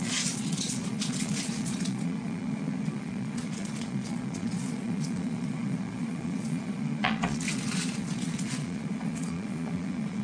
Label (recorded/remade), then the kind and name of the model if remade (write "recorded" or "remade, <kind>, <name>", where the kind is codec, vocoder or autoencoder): remade, vocoder, Vocos